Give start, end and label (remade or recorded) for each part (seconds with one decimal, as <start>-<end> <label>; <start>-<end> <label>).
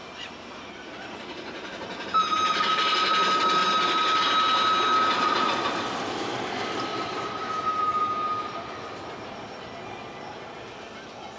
0.0-2.7 remade; 2.7-3.6 recorded; 3.6-4.2 remade; 4.2-6.9 recorded; 6.9-7.8 remade; 7.8-11.4 recorded